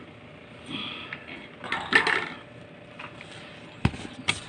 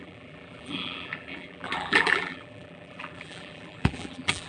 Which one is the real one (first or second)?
first